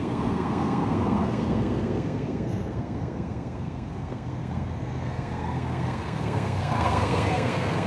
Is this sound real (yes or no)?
no